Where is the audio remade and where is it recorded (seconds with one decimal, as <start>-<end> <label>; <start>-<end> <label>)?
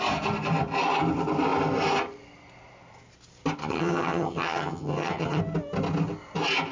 0.0-3.6 recorded; 3.6-5.4 remade; 5.4-6.7 recorded